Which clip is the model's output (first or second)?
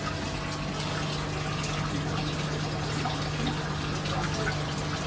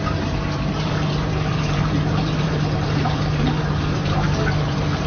second